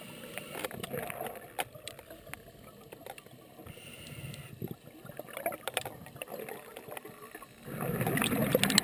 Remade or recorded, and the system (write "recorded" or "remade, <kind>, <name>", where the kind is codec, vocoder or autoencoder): recorded